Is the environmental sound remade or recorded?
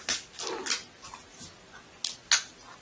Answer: recorded